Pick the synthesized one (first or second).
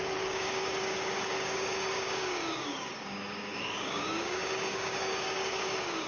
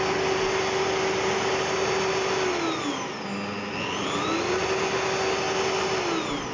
first